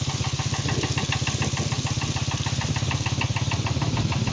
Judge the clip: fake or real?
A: real